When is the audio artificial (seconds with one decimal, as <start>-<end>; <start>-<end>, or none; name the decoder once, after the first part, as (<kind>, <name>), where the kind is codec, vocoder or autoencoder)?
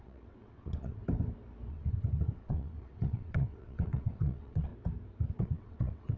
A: 0.0-1.0 (vocoder, WaveNeXt); 1.7-4.7; 5.3-6.2